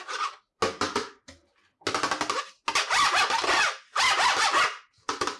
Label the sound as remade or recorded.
recorded